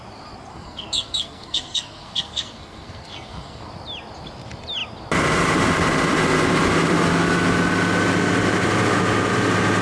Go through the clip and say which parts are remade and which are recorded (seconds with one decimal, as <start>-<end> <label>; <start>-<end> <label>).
0.0-0.5 recorded; 0.5-3.7 remade; 3.7-9.8 recorded